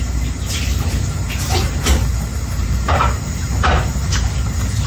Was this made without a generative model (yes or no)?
no